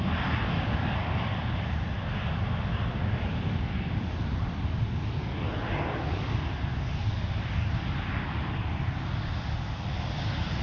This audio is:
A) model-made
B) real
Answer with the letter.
B